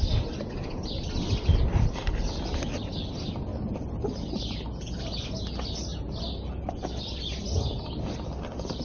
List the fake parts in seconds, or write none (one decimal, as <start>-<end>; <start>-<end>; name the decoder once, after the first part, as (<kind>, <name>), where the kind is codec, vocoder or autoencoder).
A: none